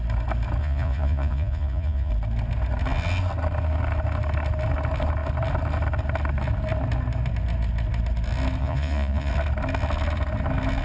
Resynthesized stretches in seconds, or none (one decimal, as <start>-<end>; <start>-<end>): 0.6-2.1; 8.6-9.3